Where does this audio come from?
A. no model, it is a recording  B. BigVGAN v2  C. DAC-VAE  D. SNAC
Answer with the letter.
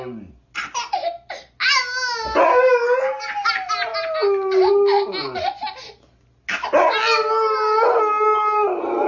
A